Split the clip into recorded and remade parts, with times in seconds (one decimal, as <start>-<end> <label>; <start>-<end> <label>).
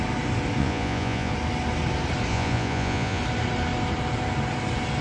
0.0-0.6 recorded; 0.6-1.3 remade; 1.3-2.3 recorded; 2.3-3.2 remade; 3.2-5.0 recorded